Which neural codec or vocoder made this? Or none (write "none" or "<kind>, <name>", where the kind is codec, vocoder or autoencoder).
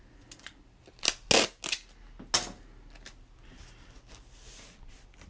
none